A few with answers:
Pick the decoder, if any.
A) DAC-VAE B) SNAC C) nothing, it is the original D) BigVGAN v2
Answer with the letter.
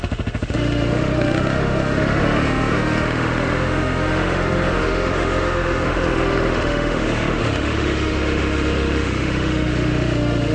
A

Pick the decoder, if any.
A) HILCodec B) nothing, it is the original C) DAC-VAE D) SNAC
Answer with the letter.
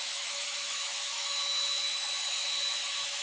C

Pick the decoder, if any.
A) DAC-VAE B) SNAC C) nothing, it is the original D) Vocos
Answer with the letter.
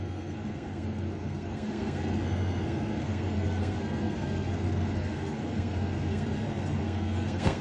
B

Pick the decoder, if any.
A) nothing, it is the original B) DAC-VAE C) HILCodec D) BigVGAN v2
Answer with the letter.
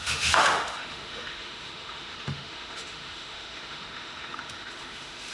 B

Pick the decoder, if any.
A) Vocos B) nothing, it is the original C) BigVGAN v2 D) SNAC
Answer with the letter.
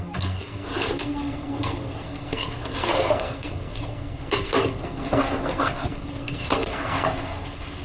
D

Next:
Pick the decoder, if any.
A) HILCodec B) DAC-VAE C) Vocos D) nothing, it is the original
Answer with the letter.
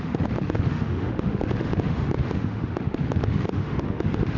B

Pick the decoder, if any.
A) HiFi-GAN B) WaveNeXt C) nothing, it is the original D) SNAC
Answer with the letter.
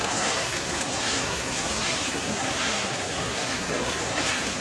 D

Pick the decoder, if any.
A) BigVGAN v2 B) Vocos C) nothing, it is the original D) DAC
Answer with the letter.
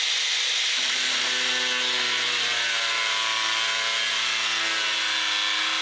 C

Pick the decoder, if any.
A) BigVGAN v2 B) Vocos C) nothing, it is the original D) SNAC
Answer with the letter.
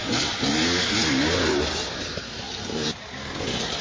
C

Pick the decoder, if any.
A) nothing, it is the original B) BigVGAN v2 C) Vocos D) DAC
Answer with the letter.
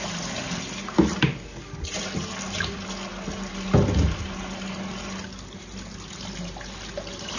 A